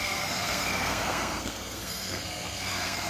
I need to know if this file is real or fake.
fake